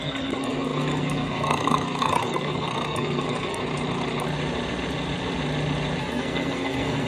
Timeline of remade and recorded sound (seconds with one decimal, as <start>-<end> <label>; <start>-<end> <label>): 0.0-3.6 remade; 3.6-6.0 recorded; 6.0-7.1 remade